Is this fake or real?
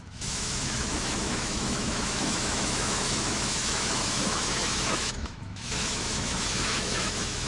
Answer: fake